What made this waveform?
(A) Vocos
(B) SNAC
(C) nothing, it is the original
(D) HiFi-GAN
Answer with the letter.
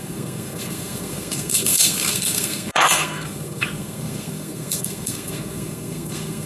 B